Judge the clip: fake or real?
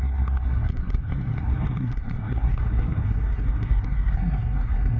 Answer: fake